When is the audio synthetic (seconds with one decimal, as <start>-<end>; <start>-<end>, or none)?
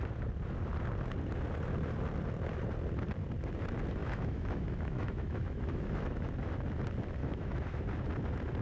4.0-6.3; 7.2-7.9